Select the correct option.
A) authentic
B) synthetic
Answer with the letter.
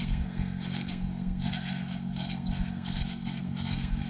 B